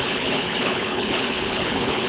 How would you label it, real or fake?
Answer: fake